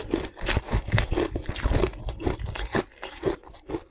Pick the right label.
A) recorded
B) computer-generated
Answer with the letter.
A